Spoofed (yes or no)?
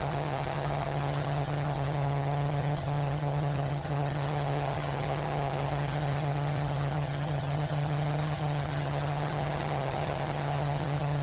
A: yes